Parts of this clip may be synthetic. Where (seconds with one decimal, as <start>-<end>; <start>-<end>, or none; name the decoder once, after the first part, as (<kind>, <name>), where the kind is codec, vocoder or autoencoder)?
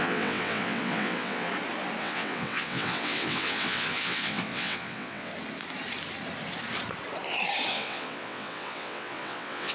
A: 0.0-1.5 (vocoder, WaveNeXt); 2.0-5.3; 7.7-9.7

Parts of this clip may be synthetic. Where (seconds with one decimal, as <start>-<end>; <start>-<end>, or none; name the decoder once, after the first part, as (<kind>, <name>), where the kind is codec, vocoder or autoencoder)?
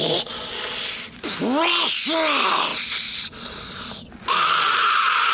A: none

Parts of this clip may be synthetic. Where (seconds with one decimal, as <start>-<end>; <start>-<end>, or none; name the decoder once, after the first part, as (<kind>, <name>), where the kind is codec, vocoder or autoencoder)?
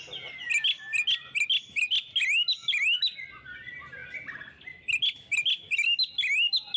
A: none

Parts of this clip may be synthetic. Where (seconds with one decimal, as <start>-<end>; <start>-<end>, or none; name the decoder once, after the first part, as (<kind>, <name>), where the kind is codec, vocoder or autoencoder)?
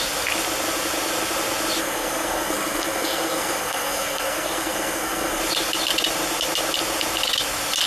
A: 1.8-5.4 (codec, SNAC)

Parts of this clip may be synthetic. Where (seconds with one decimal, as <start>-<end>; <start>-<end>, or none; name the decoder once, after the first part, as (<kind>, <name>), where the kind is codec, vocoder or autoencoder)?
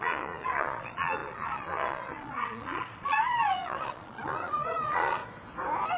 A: 0.0-5.2 (vocoder, Vocos)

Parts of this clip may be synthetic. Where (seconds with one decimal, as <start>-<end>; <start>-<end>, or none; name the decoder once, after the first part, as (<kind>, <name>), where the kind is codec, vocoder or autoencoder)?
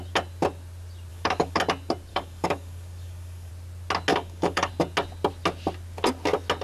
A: 1.1-1.6 (codec, DAC); 2.1-3.5; 4.1-4.7